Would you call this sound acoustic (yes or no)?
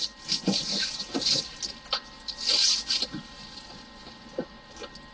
yes